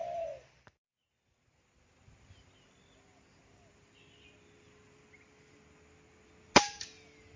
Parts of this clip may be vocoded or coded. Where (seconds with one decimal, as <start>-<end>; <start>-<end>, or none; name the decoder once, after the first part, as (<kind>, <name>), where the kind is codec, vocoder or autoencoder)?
none